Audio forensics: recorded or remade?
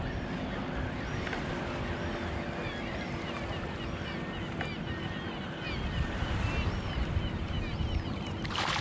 recorded